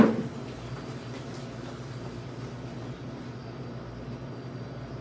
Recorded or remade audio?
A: recorded